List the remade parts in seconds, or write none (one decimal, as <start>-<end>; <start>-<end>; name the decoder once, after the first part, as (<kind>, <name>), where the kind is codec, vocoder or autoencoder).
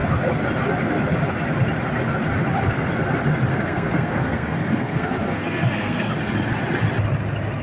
3.5-6.1 (codec, SNAC)